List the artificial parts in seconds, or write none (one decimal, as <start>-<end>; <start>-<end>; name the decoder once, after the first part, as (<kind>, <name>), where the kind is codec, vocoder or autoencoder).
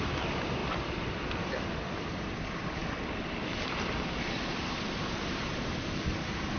0.0-6.6 (vocoder, BigVGAN v2)